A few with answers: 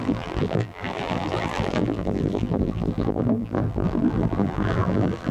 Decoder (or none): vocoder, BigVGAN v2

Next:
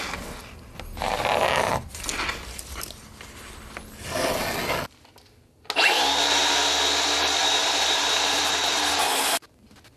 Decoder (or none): none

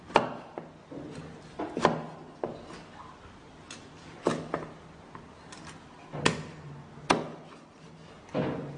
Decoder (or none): none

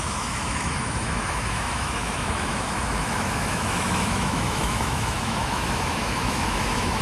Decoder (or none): autoencoder, DAC-VAE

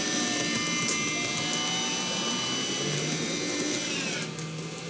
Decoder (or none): none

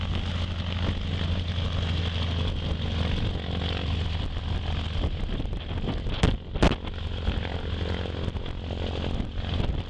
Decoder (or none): none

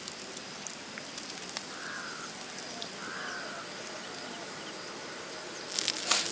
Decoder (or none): none